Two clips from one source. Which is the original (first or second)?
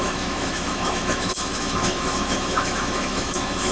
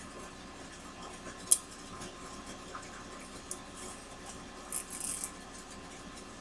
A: second